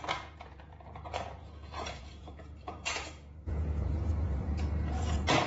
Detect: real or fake fake